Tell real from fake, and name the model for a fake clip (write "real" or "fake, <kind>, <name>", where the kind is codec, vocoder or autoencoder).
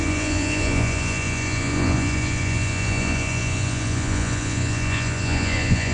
fake, vocoder, Vocos